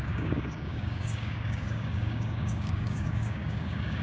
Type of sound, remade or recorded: remade